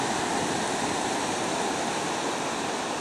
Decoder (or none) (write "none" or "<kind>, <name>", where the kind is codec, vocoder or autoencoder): none